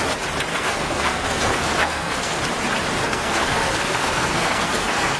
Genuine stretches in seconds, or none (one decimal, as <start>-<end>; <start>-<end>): 0.0-0.5; 2.4-3.0